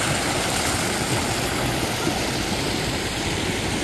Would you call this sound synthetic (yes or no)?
no